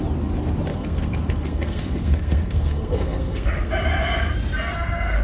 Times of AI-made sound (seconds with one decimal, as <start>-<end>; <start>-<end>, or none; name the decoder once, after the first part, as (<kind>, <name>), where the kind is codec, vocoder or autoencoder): 0.7-3.7 (codec, SNAC)